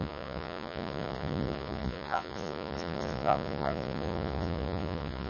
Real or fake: fake